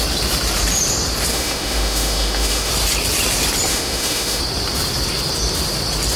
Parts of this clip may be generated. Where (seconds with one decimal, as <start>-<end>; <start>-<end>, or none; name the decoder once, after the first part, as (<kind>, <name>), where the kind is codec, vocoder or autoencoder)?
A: 1.3-2.7 (autoencoder, DAC-VAE); 3.7-4.4